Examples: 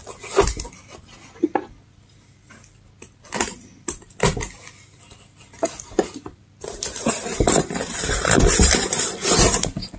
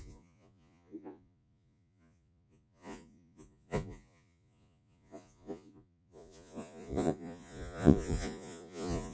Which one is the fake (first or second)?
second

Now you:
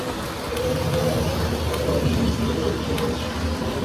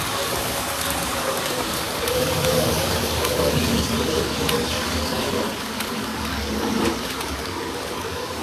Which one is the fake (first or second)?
second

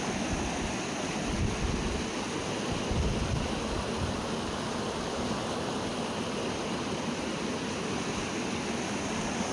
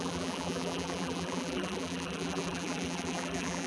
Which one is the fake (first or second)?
second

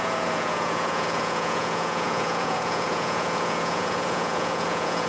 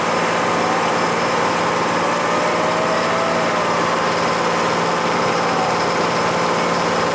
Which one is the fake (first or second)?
first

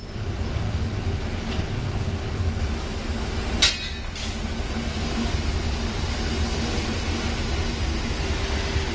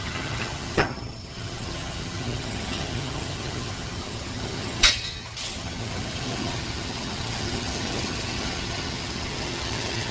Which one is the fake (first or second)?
second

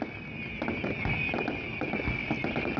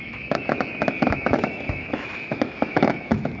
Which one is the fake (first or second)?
second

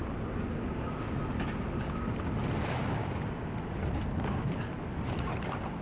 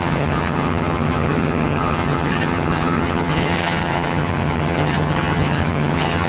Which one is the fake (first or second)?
second